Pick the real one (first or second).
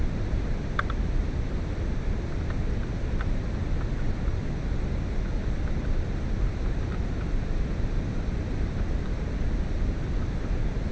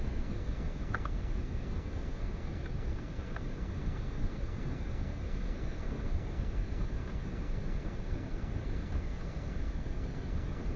first